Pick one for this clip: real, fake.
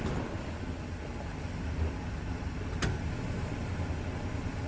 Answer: real